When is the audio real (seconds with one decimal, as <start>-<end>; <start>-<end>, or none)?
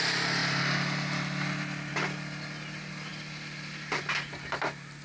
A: 0.0-5.0